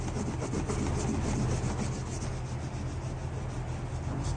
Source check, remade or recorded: recorded